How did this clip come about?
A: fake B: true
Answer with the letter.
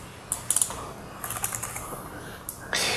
B